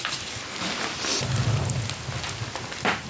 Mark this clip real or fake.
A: real